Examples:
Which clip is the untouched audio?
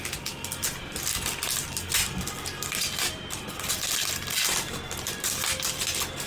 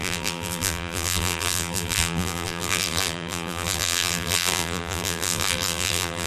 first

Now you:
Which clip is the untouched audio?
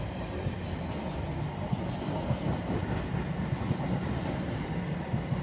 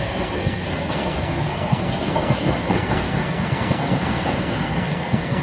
first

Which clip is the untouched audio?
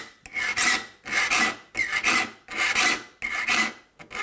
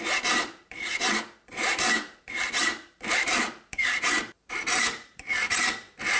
first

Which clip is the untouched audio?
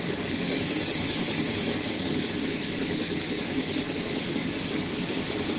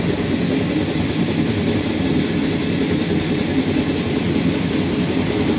second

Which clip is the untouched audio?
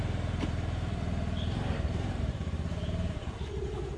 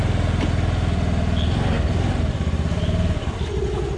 second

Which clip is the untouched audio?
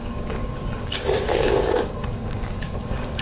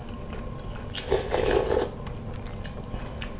second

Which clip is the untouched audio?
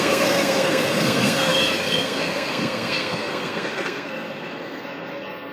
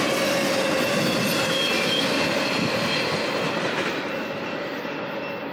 second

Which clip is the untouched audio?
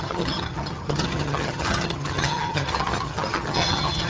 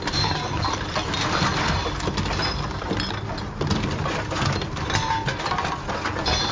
second